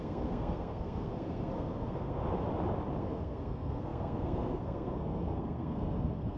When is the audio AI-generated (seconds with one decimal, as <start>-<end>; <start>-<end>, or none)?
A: 0.0-2.2; 3.0-6.4